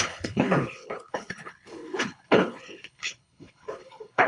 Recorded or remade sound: remade